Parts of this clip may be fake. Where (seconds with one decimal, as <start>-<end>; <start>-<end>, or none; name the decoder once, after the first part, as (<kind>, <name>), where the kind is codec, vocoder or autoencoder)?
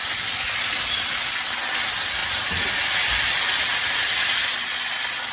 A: none